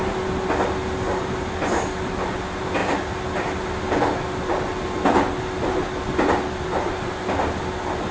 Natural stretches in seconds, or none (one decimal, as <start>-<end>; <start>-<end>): 0.0-8.1